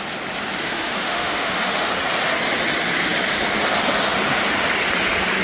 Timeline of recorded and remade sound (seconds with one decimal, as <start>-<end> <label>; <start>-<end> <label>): 0.0-0.6 recorded; 0.6-1.9 remade; 1.9-5.4 recorded